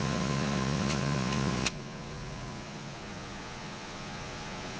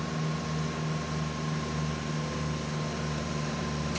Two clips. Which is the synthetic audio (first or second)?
first